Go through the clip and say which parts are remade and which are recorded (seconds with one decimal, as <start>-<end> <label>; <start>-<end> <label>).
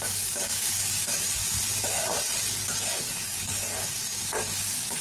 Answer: 0.0-1.4 remade; 1.4-2.8 recorded; 2.8-5.0 remade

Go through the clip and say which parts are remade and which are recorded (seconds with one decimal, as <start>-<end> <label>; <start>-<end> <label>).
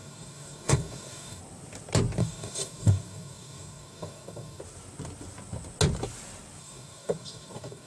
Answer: 0.0-1.4 remade; 1.4-2.2 recorded; 2.2-4.6 remade; 4.6-6.6 recorded; 6.6-7.9 remade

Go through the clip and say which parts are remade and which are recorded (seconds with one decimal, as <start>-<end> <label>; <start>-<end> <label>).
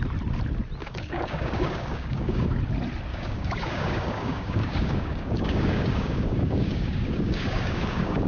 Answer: 0.0-0.8 recorded; 0.8-2.5 remade; 2.5-3.1 recorded; 3.1-8.3 remade